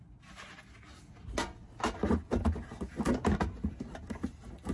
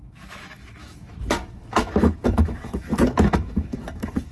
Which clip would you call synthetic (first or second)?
second